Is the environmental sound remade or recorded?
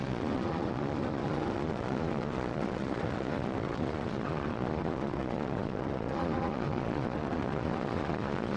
remade